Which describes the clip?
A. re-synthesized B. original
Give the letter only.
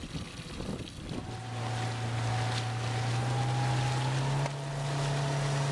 B